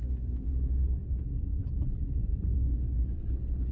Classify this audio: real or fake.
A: real